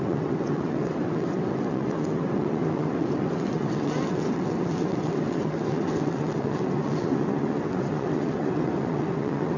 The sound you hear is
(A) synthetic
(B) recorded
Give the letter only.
A